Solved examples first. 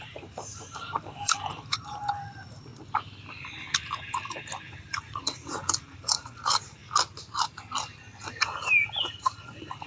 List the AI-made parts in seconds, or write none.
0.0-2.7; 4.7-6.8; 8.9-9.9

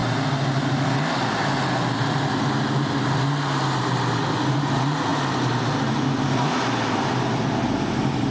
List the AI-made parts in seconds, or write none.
none

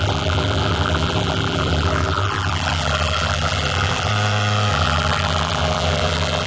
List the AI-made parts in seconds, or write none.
0.0-4.1; 4.7-6.5

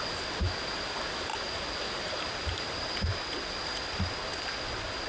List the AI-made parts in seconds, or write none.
none

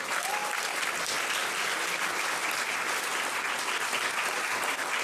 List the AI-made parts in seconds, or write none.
none

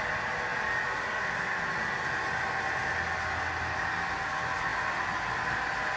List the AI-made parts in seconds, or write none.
none

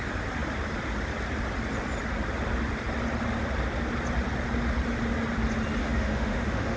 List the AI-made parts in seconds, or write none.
5.8-6.8